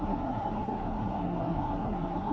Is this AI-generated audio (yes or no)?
yes